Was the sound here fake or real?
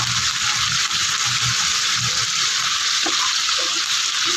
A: real